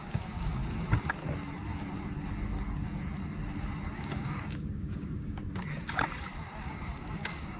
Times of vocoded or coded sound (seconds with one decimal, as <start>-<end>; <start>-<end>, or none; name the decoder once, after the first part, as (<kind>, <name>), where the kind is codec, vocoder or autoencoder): 0.0-0.6 (codec, DAC); 3.9-5.4; 6.6-7.6